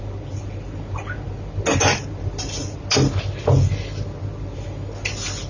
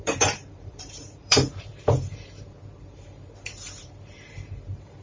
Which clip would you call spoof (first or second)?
second